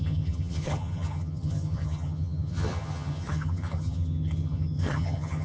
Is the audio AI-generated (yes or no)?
yes